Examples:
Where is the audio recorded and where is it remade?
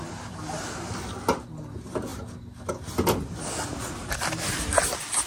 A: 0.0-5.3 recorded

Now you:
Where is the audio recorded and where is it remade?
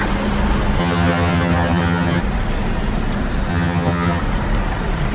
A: 0.0-0.8 recorded; 0.8-2.2 remade; 2.2-3.5 recorded; 3.5-4.2 remade; 4.2-5.1 recorded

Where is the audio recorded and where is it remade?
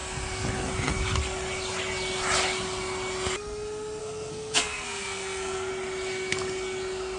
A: 0.0-4.0 recorded; 4.0-5.7 remade; 5.7-7.2 recorded